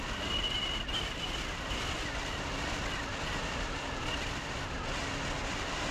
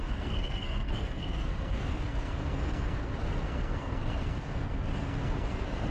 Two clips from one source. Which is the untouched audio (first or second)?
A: first